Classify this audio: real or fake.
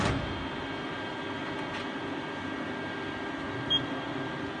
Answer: real